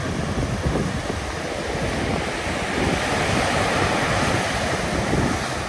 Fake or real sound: real